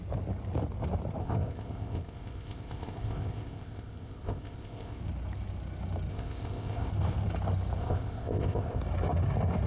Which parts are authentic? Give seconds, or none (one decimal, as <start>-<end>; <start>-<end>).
0.0-1.2; 5.0-6.1; 6.9-7.8; 8.8-9.7